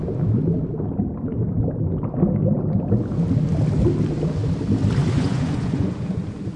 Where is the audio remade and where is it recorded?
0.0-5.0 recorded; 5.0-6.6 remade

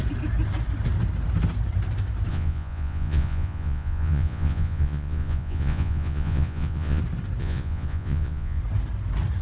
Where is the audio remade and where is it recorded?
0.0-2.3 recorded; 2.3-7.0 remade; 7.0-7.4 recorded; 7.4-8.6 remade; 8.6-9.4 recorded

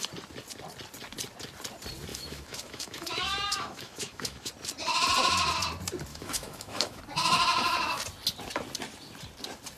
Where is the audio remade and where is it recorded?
0.0-2.1 recorded; 2.1-4.5 remade; 4.5-6.1 recorded; 6.1-7.0 remade; 7.0-9.8 recorded